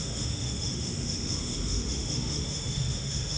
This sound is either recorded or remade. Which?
remade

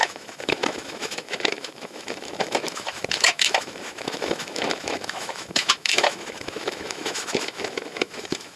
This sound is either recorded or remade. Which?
remade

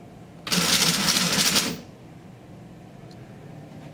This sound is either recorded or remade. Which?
recorded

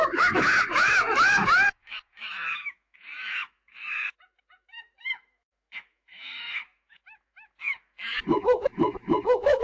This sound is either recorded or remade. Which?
remade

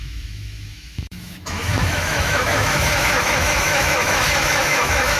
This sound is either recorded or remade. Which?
remade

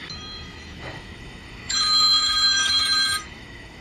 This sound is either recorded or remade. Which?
remade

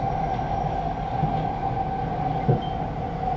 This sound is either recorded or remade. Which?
recorded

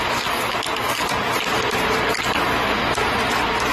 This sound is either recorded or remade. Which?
recorded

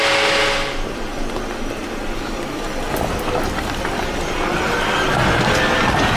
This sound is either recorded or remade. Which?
recorded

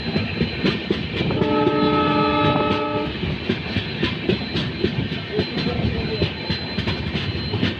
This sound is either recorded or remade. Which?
recorded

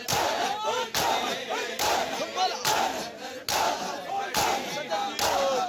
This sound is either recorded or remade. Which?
recorded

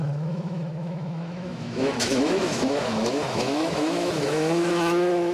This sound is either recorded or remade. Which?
remade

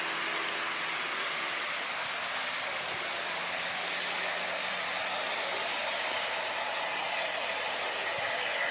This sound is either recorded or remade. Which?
recorded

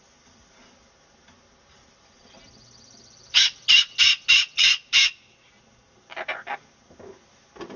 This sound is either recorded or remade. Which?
recorded